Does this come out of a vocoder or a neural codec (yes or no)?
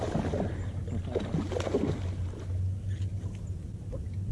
no